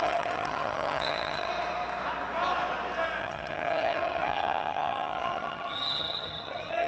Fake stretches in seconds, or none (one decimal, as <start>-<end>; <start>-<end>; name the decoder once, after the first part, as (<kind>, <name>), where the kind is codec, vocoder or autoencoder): 0.0-1.5 (vocoder, HiFi-GAN); 3.2-6.9